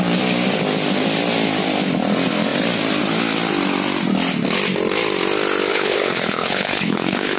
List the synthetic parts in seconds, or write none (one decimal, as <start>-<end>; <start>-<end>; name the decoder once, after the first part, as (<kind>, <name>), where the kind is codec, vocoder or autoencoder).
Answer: 5.7-7.4 (codec, HILCodec)